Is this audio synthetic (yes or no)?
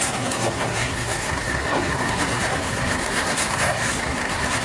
yes